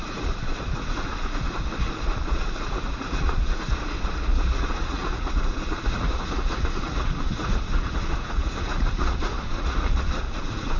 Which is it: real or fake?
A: fake